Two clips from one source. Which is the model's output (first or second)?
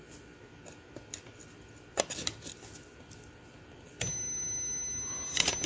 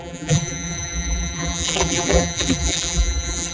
second